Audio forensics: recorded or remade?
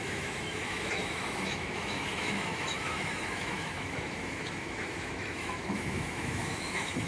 remade